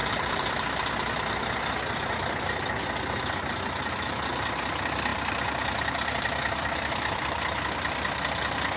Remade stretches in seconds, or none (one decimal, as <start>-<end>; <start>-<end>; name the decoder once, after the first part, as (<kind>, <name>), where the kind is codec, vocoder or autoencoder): 0.0-8.8 (vocoder, BigVGAN v2)